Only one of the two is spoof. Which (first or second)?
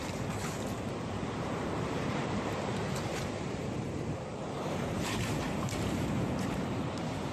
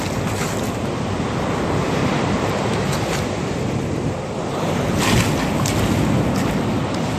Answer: first